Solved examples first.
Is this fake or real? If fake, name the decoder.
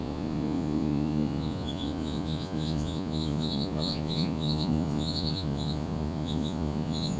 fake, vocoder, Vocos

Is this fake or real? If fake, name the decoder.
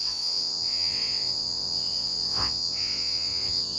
fake, vocoder, WaveNeXt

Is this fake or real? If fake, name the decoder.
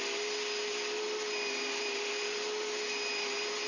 real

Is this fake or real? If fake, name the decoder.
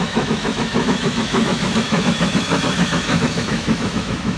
fake, autoencoder, DAC-VAE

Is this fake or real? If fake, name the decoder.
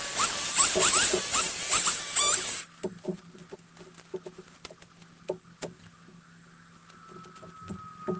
real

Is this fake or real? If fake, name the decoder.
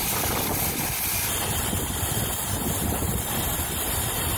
real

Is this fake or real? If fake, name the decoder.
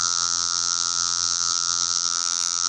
fake, vocoder, BigVGAN v2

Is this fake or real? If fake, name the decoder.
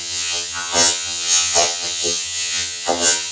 fake, vocoder, HiFi-GAN